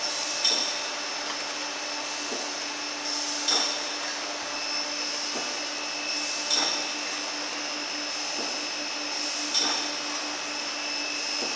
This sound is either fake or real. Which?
real